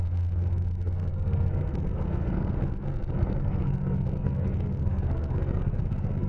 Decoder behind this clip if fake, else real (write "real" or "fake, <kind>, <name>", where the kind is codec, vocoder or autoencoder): fake, codec, SNAC